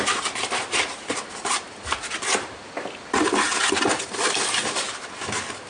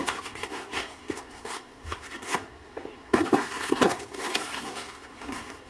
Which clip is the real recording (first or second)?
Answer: first